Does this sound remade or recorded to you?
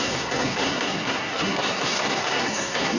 remade